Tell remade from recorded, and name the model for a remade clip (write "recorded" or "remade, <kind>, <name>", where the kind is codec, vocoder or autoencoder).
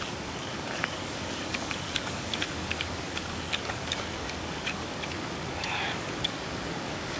remade, codec, DAC